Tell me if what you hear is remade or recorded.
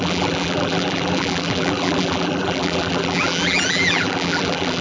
remade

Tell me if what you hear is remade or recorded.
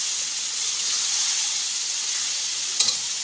remade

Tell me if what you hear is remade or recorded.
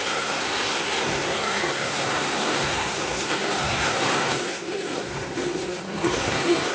remade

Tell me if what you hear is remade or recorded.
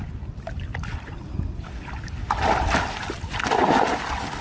recorded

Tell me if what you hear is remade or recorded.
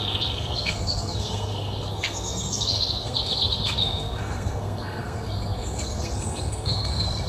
remade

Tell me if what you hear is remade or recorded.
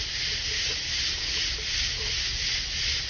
recorded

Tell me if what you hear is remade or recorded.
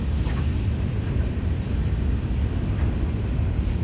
recorded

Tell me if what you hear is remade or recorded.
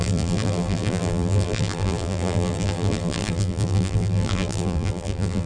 remade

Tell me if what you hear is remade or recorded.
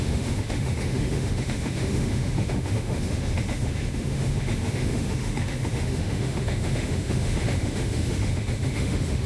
remade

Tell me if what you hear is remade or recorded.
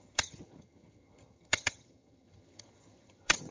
remade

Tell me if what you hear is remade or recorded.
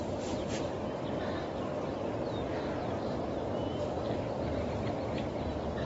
recorded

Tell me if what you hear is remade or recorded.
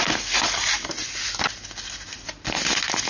recorded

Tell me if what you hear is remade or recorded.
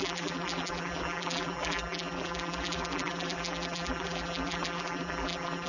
remade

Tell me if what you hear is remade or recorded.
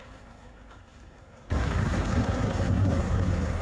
remade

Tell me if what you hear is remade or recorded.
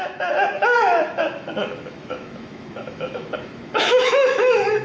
remade